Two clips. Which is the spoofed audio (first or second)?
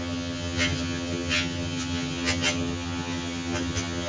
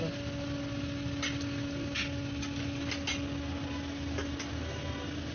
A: first